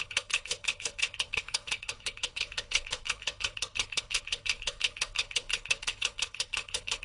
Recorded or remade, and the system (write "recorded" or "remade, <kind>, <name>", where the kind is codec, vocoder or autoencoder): remade, codec, HILCodec